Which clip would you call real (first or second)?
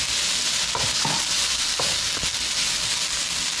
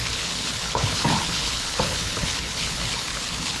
first